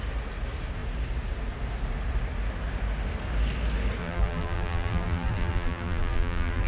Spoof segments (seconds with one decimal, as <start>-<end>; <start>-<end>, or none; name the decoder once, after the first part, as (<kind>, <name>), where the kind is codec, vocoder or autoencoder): 4.0-6.7 (vocoder, BigVGAN v2)